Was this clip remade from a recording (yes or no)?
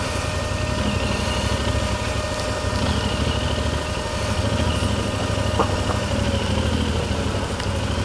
no